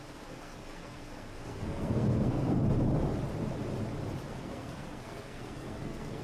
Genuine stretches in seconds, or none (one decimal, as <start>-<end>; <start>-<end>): 2.6-4.3